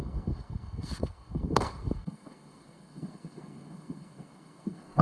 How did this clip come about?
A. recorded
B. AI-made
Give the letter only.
B